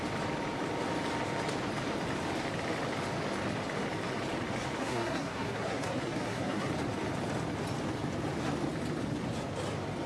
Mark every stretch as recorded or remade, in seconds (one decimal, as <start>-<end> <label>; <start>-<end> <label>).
0.0-4.8 recorded; 4.8-6.7 remade; 6.7-10.1 recorded